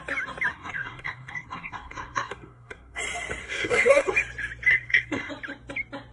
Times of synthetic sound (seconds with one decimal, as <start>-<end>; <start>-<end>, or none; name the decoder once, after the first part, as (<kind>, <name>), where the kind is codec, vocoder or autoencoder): 0.5-3.0 (codec, SNAC); 3.4-4.1; 4.7-5.3